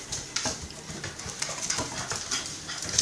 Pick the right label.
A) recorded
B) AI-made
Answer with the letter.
A